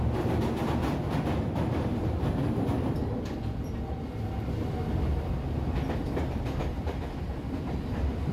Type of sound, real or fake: real